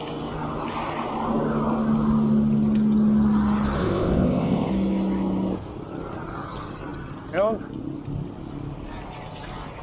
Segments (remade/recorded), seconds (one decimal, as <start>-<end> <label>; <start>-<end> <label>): 0.0-3.8 recorded; 3.8-4.7 remade; 4.7-9.8 recorded